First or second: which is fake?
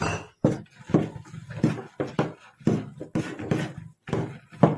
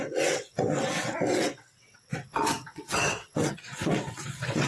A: second